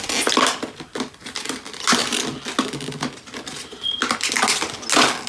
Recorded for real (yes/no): yes